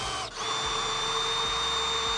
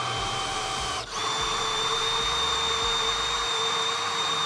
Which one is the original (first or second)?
first